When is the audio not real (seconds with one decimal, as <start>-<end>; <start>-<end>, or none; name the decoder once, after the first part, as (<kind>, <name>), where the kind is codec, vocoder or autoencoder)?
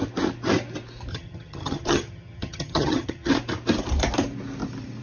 1.1-3.3 (vocoder, HiFi-GAN)